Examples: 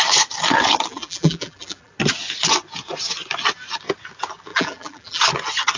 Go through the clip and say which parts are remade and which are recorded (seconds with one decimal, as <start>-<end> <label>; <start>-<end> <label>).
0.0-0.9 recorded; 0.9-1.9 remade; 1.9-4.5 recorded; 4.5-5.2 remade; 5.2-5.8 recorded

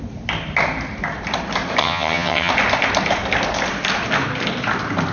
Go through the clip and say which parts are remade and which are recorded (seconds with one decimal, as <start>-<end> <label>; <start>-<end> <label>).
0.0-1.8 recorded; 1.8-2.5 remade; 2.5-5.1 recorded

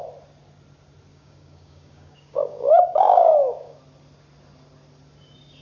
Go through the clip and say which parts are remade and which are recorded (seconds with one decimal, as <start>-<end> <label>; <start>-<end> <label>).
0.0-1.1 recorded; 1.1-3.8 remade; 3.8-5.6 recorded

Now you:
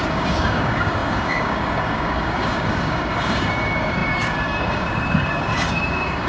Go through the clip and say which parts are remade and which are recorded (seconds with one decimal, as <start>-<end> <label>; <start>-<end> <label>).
0.0-6.3 remade

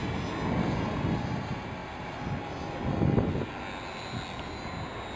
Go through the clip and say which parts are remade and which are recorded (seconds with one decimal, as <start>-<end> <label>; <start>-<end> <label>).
0.0-5.2 recorded

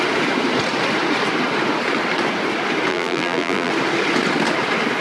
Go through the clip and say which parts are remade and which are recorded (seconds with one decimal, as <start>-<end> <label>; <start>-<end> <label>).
0.0-2.9 recorded; 2.9-3.7 remade; 3.7-5.0 recorded

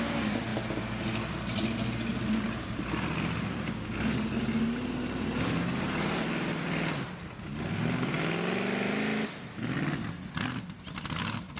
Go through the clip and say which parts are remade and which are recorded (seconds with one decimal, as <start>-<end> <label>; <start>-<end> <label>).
0.0-11.6 recorded